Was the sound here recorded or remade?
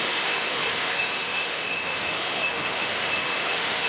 remade